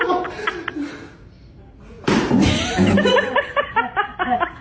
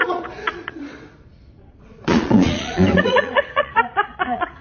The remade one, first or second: second